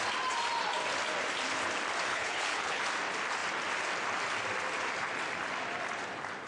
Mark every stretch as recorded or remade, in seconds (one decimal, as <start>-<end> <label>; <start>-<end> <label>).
0.0-2.1 recorded; 2.1-2.8 remade; 2.8-6.5 recorded